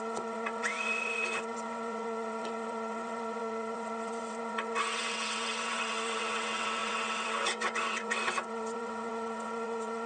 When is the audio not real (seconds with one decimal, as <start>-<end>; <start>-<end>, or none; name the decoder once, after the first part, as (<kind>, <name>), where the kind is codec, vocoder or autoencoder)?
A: 0.0-10.1 (vocoder, WaveNeXt)